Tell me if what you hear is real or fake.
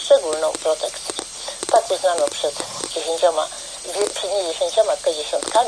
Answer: real